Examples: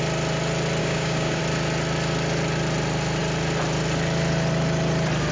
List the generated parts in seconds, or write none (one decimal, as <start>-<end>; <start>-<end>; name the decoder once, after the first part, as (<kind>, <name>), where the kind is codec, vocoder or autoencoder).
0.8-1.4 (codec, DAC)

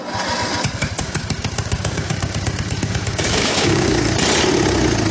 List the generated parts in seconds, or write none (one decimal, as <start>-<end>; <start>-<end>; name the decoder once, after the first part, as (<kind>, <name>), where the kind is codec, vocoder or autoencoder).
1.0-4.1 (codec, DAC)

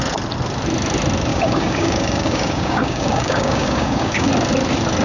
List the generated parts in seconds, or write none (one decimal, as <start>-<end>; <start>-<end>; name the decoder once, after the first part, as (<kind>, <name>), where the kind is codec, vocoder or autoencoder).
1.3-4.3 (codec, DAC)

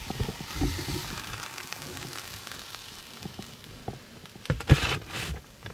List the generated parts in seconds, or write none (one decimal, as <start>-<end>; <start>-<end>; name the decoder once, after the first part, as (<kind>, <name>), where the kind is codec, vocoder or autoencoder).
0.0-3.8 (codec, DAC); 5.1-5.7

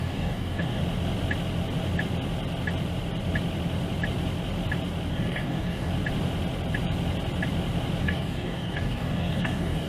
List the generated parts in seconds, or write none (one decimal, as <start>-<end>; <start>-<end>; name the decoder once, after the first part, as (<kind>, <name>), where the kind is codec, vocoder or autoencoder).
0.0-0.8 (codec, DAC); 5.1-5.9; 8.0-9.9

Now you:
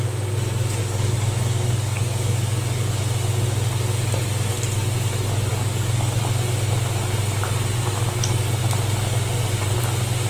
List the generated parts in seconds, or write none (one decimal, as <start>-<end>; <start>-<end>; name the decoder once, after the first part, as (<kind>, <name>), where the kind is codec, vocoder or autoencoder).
0.8-3.0 (codec, DAC); 5.5-6.2

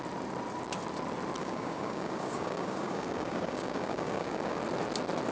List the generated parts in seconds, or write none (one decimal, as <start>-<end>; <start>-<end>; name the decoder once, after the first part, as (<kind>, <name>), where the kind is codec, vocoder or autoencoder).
1.4-4.6 (codec, DAC)